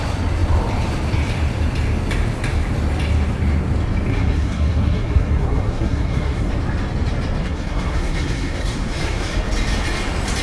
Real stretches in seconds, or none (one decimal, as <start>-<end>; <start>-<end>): 0.0-4.1; 6.5-7.4; 9.3-10.4